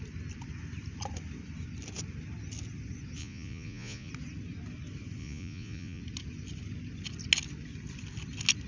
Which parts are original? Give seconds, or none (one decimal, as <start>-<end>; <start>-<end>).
0.0-3.2; 4.1-5.2; 6.0-8.7